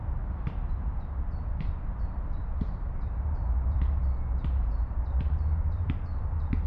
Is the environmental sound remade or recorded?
remade